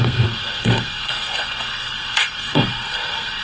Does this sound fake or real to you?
fake